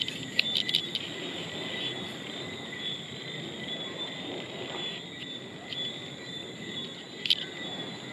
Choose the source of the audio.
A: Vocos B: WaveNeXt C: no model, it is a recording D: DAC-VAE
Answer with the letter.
C